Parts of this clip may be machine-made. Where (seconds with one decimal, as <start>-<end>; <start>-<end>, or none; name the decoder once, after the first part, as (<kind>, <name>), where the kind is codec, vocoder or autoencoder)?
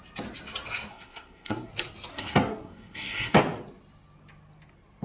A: 0.9-1.7 (codec, SNAC); 2.1-3.4